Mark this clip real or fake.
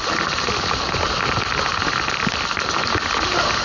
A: real